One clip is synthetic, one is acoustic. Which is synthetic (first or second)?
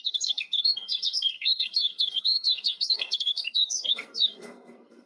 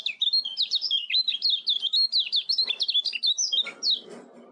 first